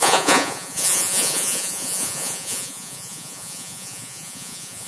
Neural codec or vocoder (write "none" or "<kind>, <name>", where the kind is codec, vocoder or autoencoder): vocoder, Vocos